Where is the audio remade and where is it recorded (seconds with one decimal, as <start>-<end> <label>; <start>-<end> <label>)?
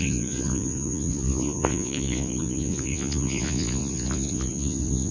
0.0-5.1 remade